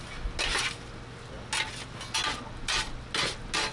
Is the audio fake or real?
real